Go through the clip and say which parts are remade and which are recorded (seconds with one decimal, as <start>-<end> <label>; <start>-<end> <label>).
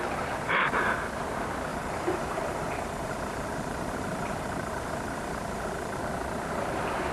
0.0-1.7 recorded; 1.7-6.0 remade; 6.0-7.1 recorded